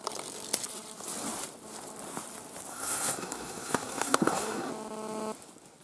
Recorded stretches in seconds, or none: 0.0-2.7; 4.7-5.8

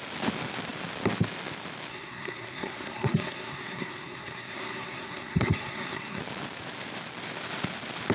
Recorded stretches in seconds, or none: 0.0-1.9; 6.2-8.1